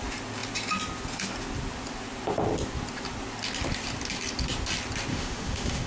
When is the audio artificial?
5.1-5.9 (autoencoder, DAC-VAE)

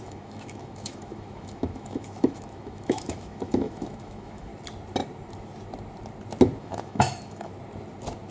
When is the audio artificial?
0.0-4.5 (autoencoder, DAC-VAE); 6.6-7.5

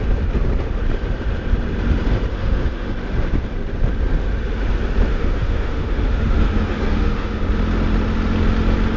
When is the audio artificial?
2.3-2.9 (autoencoder, DAC-VAE); 5.1-7.4